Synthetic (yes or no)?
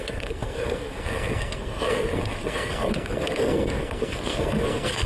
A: yes